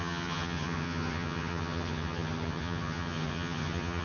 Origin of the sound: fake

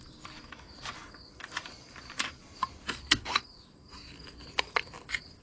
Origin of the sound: real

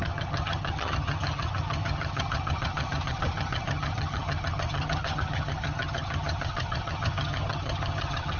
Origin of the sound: fake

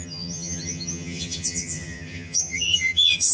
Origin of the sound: fake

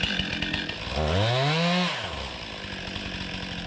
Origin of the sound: real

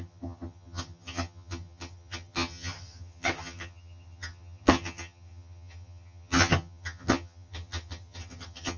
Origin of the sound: fake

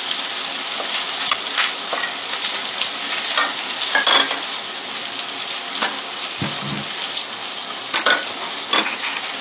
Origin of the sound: real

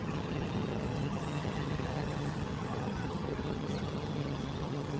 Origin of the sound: fake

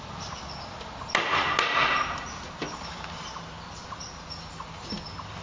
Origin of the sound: real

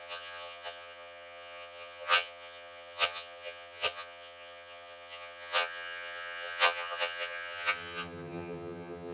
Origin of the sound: fake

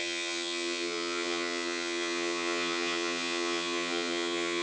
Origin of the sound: fake